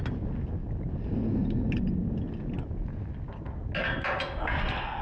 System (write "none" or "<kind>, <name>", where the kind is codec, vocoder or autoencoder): none